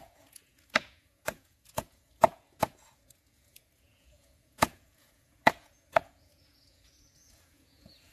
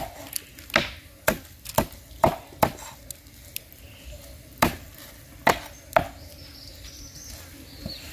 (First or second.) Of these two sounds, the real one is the second